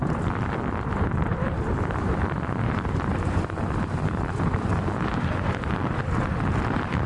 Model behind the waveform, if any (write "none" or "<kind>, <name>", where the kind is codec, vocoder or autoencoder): vocoder, BigVGAN v2